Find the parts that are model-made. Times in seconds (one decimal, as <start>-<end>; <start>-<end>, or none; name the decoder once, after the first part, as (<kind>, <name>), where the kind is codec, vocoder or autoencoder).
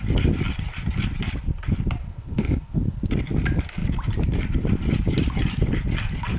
2.1-2.8 (codec, SNAC)